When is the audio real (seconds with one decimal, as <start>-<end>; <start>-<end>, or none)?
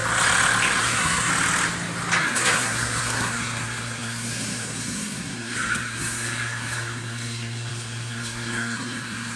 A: 0.0-0.8; 1.3-2.2